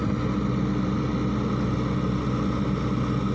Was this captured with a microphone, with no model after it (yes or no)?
yes